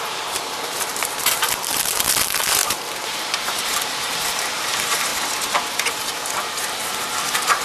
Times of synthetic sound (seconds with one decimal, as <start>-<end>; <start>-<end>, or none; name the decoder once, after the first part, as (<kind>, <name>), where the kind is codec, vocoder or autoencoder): 0.0-5.1 (vocoder, BigVGAN v2); 5.7-7.6